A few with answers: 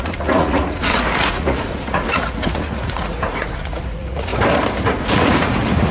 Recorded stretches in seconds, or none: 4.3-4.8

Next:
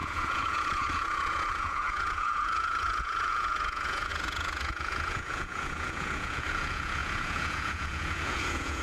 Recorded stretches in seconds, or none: none

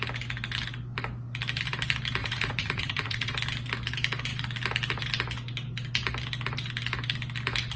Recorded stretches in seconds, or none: 0.0-2.2; 3.3-7.8